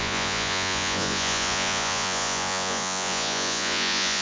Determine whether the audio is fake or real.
fake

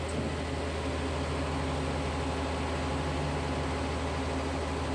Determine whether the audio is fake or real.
real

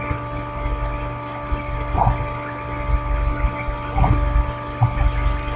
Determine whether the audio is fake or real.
real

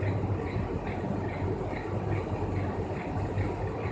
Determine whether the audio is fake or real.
real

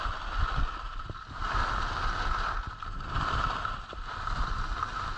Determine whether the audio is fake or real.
real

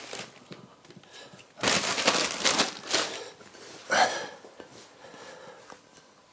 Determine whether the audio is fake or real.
real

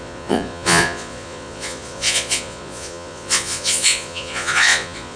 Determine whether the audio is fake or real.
fake